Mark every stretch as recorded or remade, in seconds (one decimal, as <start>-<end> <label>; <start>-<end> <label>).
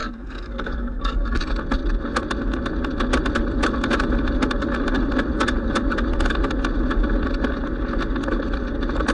0.0-1.4 remade; 1.4-9.1 recorded